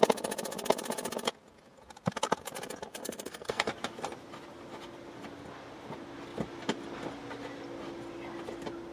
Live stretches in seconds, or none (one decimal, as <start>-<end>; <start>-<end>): 0.0-3.0; 3.7-8.9